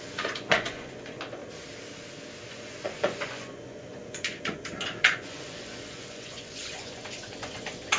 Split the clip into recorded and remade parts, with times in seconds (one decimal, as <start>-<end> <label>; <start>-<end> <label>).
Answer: 0.0-1.4 remade; 1.4-2.5 recorded; 2.5-8.0 remade